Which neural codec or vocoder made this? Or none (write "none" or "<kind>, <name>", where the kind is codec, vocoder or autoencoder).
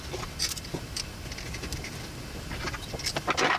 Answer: none